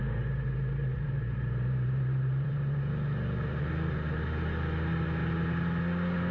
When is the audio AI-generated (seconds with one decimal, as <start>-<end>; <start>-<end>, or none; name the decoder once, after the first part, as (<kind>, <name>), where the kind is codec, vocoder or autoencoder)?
0.9-2.9 (vocoder, BigVGAN v2)